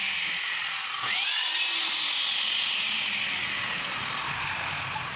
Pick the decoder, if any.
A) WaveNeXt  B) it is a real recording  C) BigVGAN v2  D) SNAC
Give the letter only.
B